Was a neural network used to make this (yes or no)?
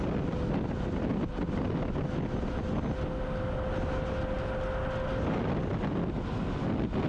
no